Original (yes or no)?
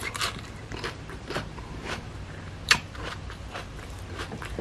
no